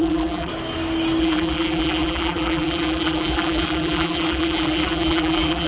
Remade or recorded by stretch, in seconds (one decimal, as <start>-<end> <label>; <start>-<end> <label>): 0.0-0.5 remade; 0.5-1.2 recorded; 1.2-5.7 remade